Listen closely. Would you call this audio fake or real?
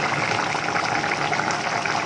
real